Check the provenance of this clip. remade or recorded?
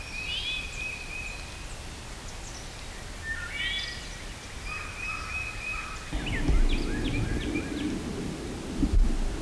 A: recorded